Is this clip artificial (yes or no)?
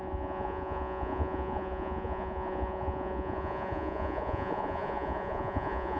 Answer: yes